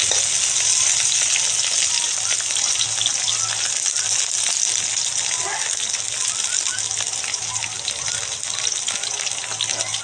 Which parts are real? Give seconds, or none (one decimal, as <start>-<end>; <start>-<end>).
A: 0.0-10.0